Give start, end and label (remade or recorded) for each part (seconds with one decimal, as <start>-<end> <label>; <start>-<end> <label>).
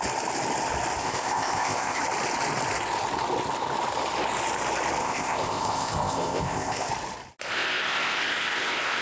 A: 0.0-1.0 recorded; 1.0-2.0 remade; 2.0-5.0 recorded; 5.0-6.9 remade; 6.9-7.4 recorded; 7.4-9.0 remade